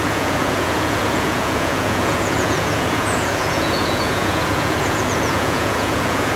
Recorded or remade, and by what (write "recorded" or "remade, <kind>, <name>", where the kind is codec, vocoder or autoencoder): remade, vocoder, Vocos